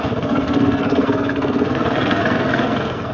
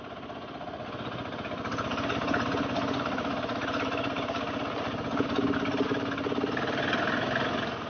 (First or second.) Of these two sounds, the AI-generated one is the first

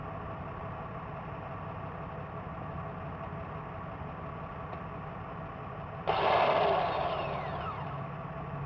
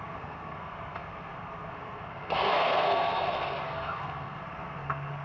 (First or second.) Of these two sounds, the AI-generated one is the second